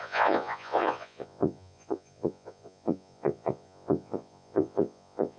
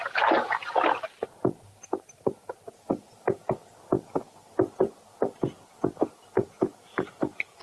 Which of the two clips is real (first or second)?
second